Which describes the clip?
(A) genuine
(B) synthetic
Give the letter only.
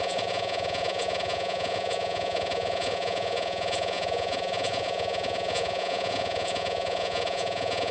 B